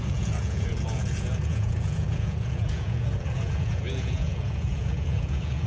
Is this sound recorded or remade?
remade